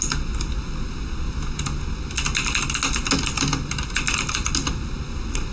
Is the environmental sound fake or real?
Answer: real